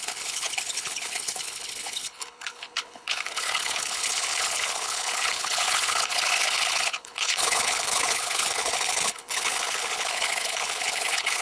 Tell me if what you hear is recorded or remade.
remade